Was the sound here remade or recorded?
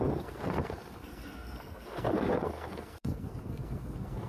remade